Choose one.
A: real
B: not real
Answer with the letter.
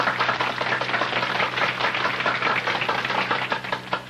A